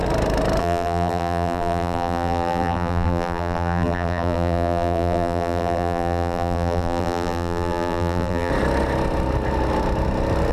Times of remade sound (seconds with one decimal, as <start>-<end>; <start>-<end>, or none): 0.6-8.5